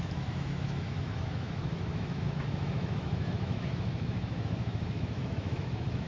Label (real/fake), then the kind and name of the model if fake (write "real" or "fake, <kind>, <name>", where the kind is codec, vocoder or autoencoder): fake, autoencoder, DAC-VAE